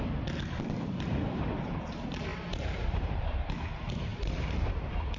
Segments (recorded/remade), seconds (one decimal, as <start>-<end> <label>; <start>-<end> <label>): 0.0-2.3 recorded; 2.3-3.6 remade; 3.6-4.1 recorded; 4.1-4.7 remade; 4.7-5.2 recorded